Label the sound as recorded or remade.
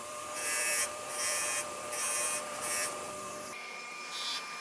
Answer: remade